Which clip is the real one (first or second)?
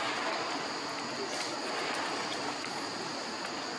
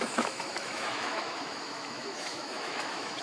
first